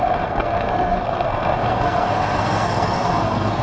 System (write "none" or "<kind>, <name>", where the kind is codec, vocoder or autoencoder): codec, SNAC